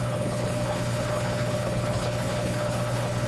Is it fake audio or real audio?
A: fake